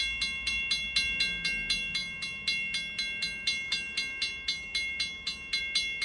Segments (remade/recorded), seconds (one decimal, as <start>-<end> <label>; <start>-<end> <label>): 0.0-6.0 recorded